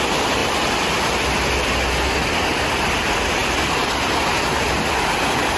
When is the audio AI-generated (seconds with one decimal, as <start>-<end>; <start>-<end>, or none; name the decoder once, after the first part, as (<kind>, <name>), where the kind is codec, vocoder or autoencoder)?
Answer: none